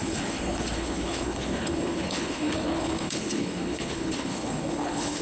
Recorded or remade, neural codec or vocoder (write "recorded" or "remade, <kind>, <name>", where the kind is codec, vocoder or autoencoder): remade, codec, HILCodec